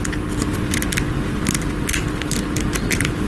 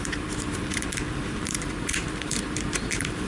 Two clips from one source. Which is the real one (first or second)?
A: first